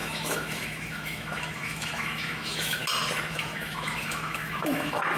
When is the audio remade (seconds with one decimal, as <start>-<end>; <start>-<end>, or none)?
0.0-2.8; 3.3-5.2